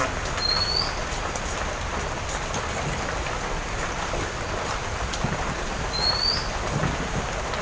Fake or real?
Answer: real